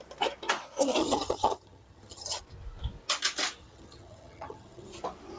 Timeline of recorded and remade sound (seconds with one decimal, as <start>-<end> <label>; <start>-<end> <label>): 0.0-1.0 recorded; 1.0-2.4 remade; 2.4-3.6 recorded; 3.6-5.0 remade; 5.0-5.4 recorded